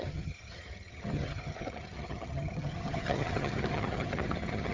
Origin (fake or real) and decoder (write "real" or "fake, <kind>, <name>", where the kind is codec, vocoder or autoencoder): fake, vocoder, HiFi-GAN